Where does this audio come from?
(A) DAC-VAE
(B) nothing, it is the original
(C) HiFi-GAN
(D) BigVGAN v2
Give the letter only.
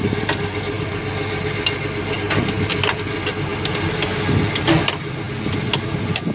B